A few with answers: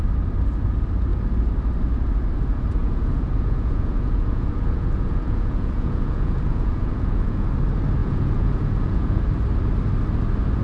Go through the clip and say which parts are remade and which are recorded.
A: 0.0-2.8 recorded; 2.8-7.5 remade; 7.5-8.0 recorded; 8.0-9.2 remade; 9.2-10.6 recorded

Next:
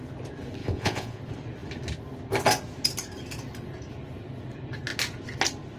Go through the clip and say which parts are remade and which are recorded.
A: 0.0-0.6 recorded; 0.6-1.2 remade; 1.2-5.8 recorded